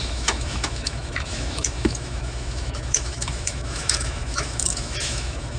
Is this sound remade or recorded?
remade